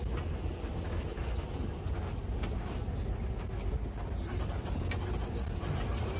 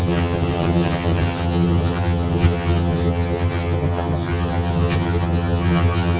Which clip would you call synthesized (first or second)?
second